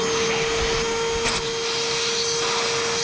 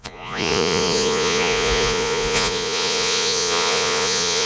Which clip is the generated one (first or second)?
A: second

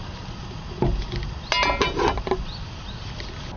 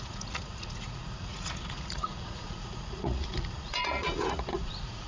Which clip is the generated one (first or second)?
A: second